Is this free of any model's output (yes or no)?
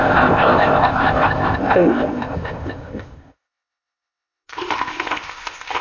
no